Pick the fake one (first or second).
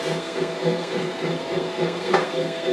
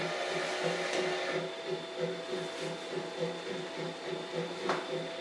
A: first